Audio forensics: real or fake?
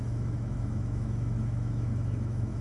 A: fake